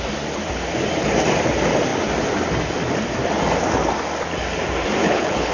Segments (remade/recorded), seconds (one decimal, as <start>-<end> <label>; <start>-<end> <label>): 0.0-5.0 recorded; 5.0-5.5 remade